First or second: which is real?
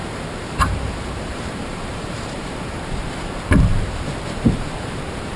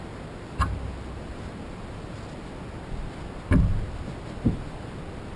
second